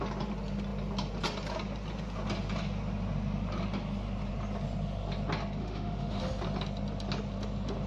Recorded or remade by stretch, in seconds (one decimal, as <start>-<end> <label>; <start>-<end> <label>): 0.0-5.6 recorded; 5.6-6.2 remade; 6.2-7.9 recorded